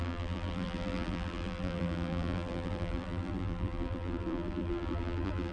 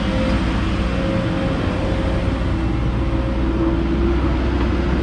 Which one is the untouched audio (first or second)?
second